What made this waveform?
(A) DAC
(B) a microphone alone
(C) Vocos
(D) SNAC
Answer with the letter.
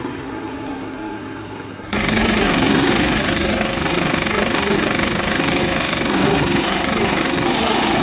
D